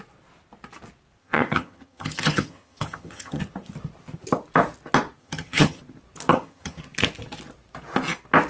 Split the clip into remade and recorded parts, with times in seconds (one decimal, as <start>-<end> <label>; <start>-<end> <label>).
0.0-1.2 recorded; 1.2-3.4 remade; 3.4-5.2 recorded; 5.2-5.8 remade; 5.8-6.3 recorded; 6.3-6.8 remade; 6.8-8.5 recorded